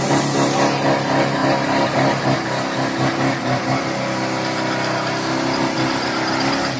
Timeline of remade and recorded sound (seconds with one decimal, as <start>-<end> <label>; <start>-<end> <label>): 0.0-6.8 recorded